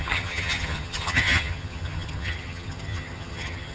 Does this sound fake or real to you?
fake